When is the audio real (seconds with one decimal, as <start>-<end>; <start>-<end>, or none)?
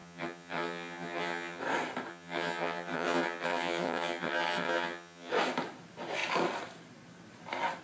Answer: 1.6-2.1; 5.3-7.8